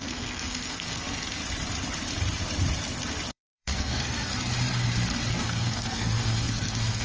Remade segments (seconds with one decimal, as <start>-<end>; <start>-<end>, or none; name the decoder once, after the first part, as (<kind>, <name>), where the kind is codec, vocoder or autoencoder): 0.0-1.4 (codec, SNAC); 3.3-4.3; 5.3-7.0